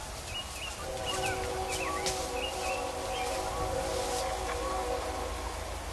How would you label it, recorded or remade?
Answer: recorded